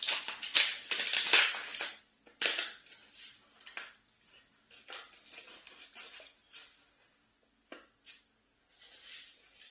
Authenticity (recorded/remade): recorded